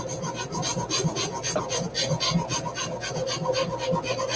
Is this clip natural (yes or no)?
yes